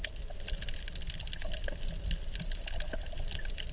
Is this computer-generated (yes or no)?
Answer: no